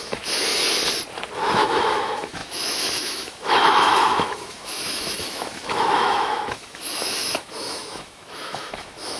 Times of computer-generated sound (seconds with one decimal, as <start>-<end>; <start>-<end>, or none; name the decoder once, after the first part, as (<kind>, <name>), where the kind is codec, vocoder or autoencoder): 0.0-0.5 (autoencoder, DAC-VAE); 1.4-9.2